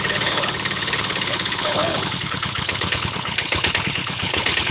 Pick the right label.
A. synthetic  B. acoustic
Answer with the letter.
A